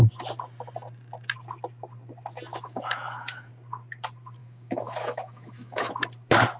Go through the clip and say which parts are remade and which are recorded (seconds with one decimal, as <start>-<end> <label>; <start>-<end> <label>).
0.0-2.5 recorded; 2.5-3.5 remade; 3.5-4.4 recorded; 4.4-5.9 remade; 5.9-6.6 recorded